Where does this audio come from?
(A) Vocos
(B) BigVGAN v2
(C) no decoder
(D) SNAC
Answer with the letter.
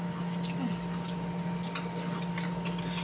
C